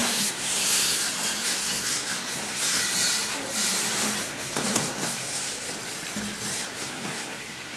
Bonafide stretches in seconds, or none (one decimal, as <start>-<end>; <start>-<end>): 1.0-1.4; 2.8-4.2; 5.7-6.5